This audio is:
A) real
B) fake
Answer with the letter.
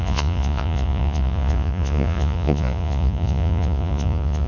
B